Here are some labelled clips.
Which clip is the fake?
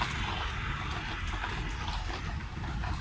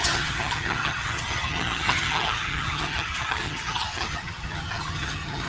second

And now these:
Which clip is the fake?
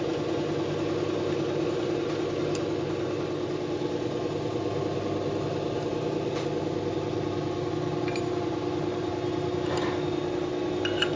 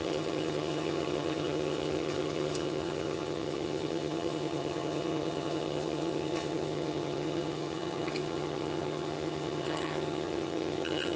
second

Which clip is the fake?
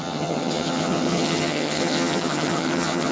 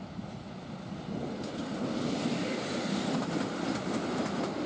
first